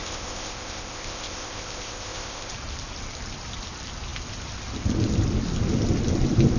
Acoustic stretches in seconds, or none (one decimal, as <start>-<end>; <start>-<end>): 2.5-6.6